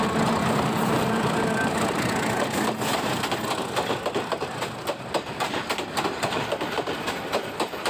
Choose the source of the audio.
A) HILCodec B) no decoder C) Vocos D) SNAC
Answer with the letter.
B